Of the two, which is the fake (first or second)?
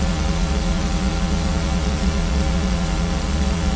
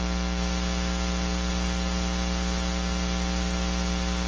first